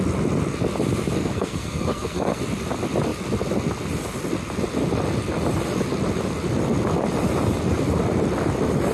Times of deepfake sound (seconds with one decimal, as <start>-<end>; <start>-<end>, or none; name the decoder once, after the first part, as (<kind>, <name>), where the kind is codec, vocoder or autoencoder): 1.2-2.4 (codec, SNAC)